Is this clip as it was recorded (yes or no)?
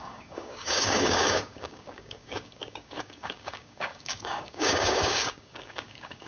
no